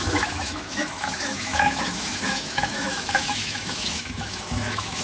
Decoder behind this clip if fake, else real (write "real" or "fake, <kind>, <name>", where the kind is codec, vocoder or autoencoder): fake, autoencoder, DAC-VAE